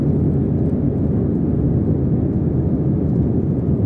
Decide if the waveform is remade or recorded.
recorded